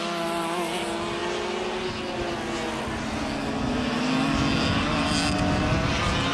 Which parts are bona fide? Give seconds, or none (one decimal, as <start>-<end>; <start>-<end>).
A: 0.0-6.3